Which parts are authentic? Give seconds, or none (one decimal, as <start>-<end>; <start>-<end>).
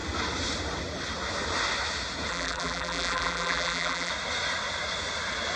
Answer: 0.0-2.3; 4.1-5.6